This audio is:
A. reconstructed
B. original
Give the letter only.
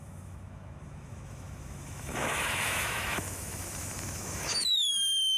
A